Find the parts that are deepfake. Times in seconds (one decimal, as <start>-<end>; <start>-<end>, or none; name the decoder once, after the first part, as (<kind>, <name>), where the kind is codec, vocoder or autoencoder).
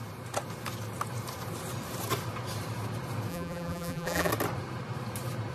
3.3-4.3 (vocoder, BigVGAN v2)